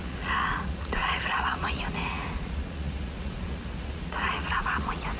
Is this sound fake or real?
fake